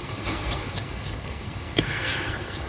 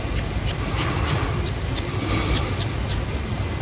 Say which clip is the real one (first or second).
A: second